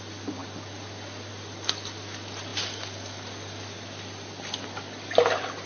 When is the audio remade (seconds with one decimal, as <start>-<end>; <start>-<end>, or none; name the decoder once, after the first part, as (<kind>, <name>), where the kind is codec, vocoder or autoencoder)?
none